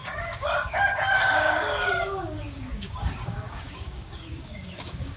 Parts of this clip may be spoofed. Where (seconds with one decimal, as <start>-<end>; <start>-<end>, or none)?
0.0-5.2